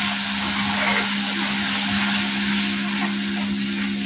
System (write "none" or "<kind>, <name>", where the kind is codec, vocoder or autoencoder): none